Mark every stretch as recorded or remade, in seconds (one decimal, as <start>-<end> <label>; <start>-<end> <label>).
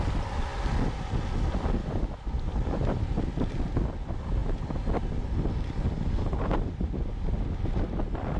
0.0-1.8 recorded; 1.8-2.3 remade; 2.3-8.4 recorded